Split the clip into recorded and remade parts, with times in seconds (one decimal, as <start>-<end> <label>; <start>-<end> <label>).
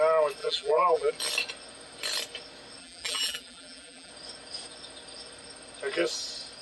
0.0-0.4 recorded; 0.4-1.1 remade; 1.1-2.8 recorded; 2.8-4.1 remade; 4.1-6.6 recorded